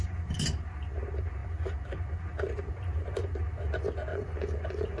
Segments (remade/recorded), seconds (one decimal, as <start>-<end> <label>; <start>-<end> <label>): 0.0-4.1 recorded; 4.1-5.0 remade